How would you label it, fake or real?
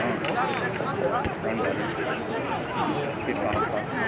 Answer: real